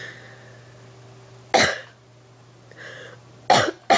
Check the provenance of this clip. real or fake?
real